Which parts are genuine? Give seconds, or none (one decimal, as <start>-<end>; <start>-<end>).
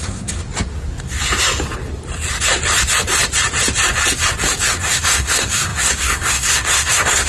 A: 0.4-4.8